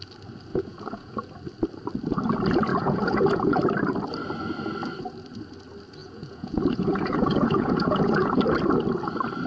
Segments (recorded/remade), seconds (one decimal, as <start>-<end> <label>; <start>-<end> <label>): 0.0-0.5 recorded; 0.5-1.3 remade; 1.3-2.7 recorded; 2.7-3.6 remade; 3.6-6.0 recorded; 6.0-8.4 remade; 8.4-9.5 recorded